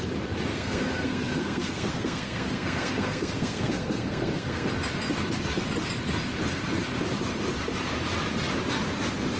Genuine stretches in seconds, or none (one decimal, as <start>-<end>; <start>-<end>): 0.0-0.5; 4.7-9.4